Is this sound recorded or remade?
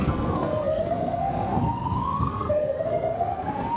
remade